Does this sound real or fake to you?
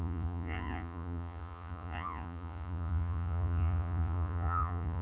fake